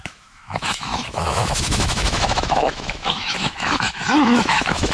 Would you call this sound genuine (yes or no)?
no